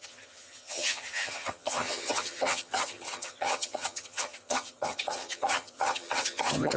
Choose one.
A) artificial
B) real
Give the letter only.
A